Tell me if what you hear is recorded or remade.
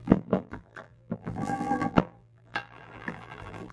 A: remade